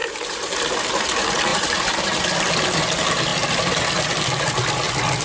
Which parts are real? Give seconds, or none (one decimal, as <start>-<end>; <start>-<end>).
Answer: 0.6-1.5; 2.2-5.2